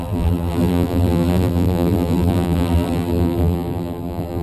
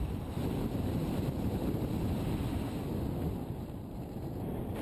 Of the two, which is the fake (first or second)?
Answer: first